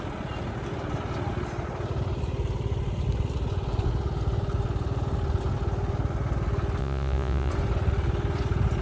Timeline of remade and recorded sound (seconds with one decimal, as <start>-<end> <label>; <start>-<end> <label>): 0.0-6.8 recorded; 6.8-7.5 remade; 7.5-8.8 recorded